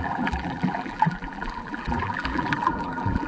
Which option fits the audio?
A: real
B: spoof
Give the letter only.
B